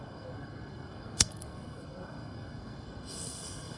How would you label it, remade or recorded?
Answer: remade